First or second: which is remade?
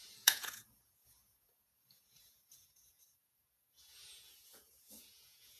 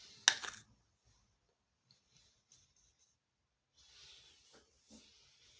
first